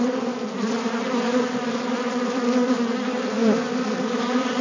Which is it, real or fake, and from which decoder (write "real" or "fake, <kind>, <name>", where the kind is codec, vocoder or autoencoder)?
fake, vocoder, BigVGAN v2